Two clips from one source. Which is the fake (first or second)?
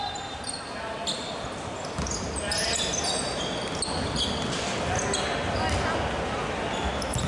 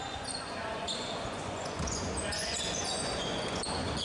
second